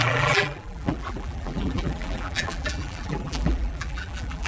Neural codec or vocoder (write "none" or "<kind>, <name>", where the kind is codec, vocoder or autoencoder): vocoder, BigVGAN v2